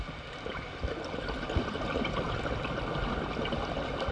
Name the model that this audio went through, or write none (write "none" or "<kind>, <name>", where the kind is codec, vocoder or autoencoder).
none